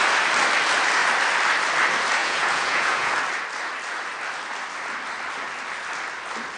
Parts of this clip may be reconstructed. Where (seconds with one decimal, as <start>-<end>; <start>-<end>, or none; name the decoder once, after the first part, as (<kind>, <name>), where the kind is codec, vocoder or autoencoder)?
2.2-3.1 (vocoder, Vocos)